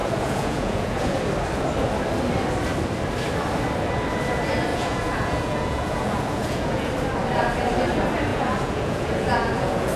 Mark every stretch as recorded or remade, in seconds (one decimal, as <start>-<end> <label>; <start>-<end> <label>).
0.0-1.2 remade; 1.2-4.7 recorded; 4.7-6.9 remade; 6.9-8.3 recorded; 8.3-10.0 remade